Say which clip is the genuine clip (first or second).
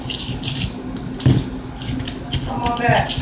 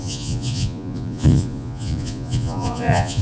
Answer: first